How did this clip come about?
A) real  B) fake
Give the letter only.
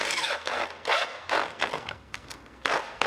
B